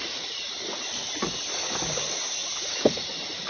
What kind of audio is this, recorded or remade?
recorded